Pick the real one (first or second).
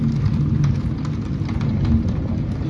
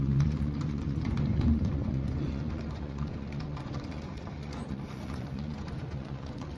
first